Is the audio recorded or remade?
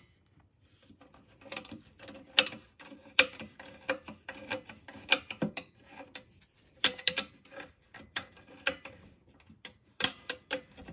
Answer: remade